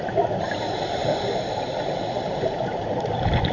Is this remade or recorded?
recorded